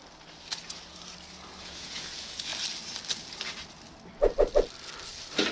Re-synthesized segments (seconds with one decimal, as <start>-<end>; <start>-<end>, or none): 1.6-2.5

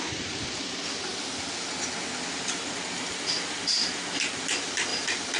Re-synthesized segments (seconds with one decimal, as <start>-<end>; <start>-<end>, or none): 4.9-5.4

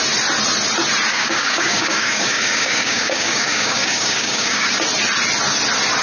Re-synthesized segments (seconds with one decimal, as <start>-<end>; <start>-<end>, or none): 1.1-4.7